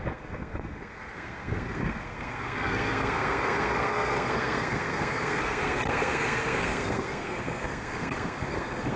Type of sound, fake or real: fake